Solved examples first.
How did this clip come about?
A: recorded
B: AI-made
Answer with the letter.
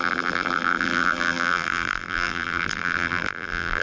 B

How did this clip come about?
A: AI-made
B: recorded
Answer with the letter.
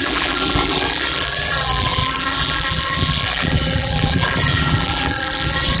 A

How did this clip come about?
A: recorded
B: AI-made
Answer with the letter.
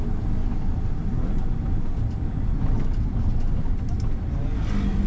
A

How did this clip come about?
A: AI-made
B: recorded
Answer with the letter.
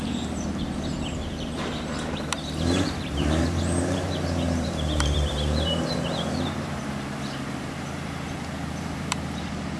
A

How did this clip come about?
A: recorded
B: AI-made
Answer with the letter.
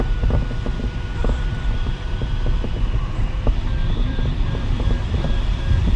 B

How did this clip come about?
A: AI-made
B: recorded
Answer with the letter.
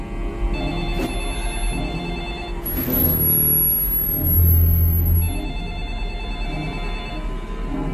B